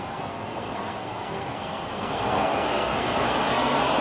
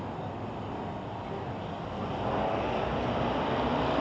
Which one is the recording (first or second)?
second